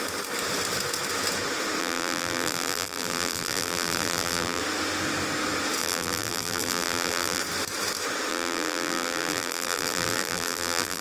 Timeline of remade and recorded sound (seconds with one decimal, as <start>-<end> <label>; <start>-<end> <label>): 0.0-1.8 recorded; 1.8-4.6 remade; 4.6-5.8 recorded; 5.8-7.4 remade; 7.4-8.3 recorded; 8.3-11.0 remade